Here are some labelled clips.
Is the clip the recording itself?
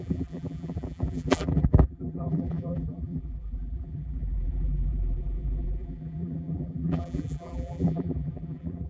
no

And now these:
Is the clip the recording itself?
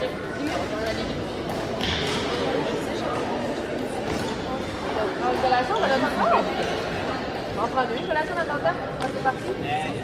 yes